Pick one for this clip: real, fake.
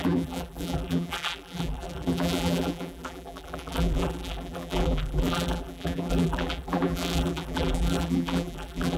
fake